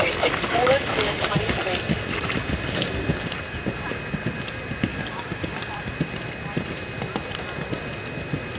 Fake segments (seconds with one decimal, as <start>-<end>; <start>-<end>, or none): 4.9-5.6

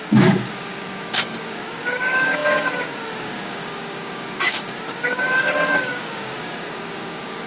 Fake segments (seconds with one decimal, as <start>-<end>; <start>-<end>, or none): 0.0-7.5